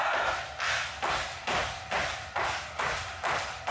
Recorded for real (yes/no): yes